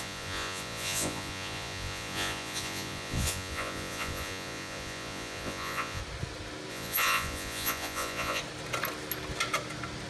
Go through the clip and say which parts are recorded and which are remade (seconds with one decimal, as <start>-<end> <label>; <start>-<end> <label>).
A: 0.0-6.0 remade; 6.0-6.7 recorded; 6.7-8.4 remade; 8.4-10.1 recorded